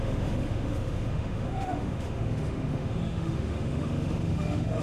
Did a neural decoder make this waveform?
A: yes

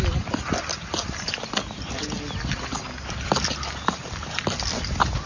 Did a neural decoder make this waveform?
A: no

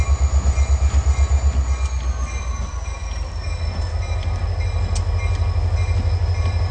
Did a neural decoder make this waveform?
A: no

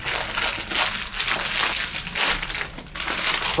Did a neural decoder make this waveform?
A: no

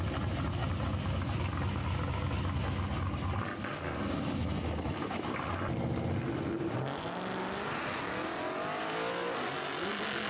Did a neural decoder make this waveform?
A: no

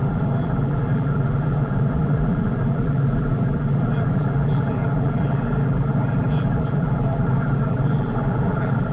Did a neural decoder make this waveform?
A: yes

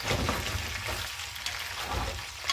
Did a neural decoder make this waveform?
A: no